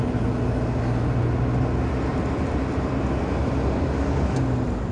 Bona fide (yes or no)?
yes